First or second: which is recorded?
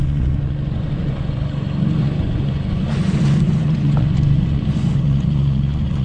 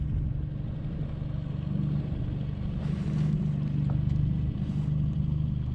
second